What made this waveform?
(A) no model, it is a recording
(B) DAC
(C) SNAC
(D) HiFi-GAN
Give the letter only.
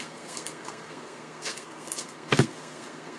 C